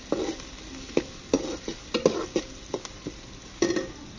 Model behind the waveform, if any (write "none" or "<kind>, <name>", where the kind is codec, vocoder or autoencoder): none